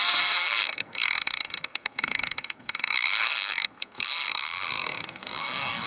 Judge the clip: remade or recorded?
remade